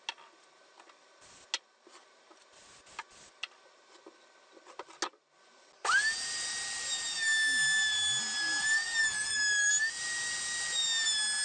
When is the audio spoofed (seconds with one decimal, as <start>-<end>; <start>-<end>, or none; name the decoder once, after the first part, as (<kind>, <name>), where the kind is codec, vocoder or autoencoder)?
9.0-9.7 (autoencoder, DAC-VAE)